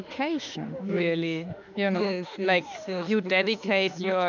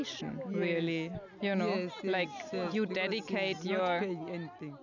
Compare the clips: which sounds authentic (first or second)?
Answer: second